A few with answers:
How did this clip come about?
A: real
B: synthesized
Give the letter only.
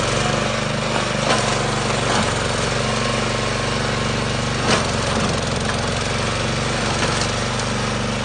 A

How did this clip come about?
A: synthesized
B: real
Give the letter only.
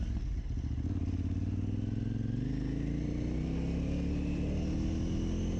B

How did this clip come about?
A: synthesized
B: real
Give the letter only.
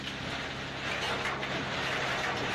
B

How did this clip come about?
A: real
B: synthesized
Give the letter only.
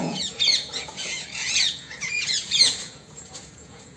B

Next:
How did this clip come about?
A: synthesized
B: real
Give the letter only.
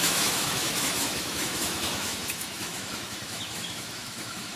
A